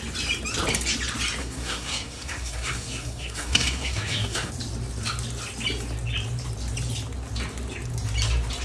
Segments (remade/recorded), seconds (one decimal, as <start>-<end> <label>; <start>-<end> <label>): 0.0-1.4 recorded; 1.4-4.5 remade; 4.5-8.6 recorded